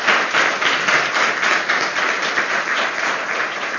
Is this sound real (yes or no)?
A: yes